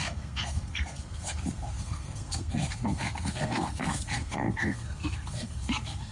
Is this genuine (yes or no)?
no